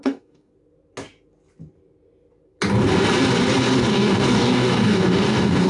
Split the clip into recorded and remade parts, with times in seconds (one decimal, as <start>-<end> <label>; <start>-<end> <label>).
0.0-0.5 remade; 0.5-3.9 recorded; 3.9-5.7 remade